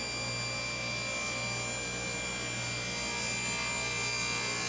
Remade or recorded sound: recorded